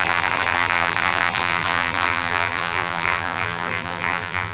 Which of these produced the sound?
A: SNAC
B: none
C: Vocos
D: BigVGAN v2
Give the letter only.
D